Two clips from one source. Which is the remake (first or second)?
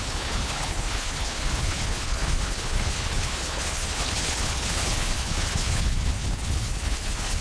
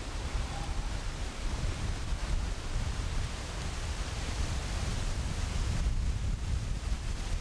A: first